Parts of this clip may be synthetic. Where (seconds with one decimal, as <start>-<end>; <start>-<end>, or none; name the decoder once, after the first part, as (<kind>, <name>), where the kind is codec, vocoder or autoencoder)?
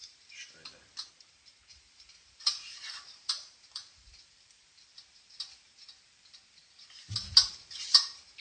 1.1-6.6 (vocoder, BigVGAN v2); 7.5-8.4